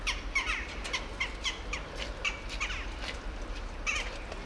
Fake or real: real